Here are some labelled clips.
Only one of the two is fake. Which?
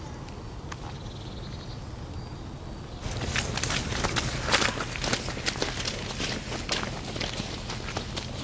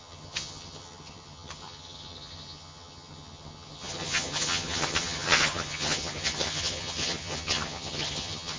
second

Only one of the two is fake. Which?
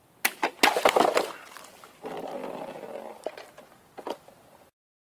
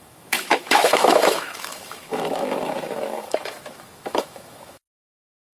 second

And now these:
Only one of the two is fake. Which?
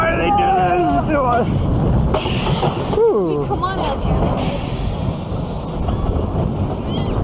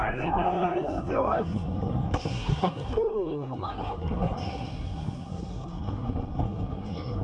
second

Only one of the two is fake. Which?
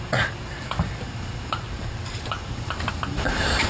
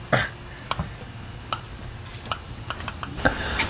first